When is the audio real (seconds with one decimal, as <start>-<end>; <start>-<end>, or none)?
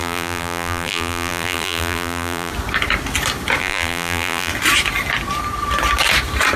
2.5-3.6; 4.5-6.6